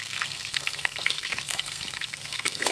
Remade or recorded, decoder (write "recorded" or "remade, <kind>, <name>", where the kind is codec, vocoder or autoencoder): remade, codec, SNAC